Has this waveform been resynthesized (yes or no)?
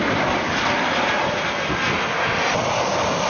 no